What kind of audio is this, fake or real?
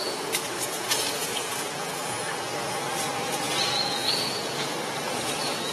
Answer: fake